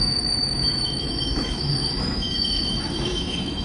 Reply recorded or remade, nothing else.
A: remade